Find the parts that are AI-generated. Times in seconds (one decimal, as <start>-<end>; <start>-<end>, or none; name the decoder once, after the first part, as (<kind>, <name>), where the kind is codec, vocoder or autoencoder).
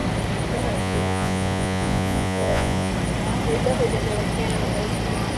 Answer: 0.8-2.9 (vocoder, Vocos)